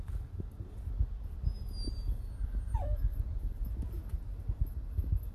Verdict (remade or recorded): recorded